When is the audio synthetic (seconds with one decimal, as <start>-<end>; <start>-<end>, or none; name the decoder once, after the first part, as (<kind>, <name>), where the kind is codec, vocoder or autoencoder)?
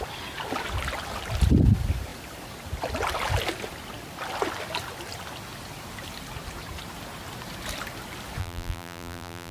8.4-9.5 (vocoder, BigVGAN v2)